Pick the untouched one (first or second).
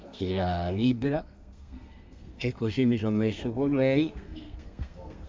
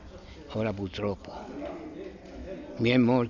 second